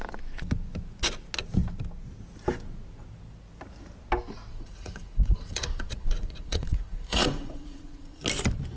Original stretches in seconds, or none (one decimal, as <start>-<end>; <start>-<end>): 0.0-4.5; 8.2-8.8